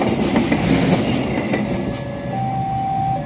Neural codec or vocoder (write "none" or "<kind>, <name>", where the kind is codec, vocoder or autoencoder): none